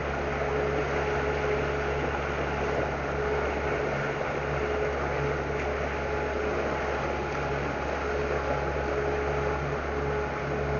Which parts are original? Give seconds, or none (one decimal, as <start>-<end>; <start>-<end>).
0.0-10.8